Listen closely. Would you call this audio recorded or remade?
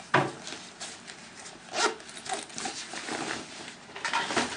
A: recorded